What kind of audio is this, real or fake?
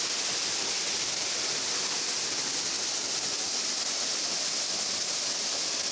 real